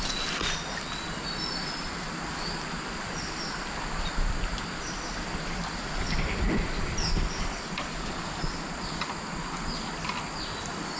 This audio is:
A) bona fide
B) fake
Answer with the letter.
A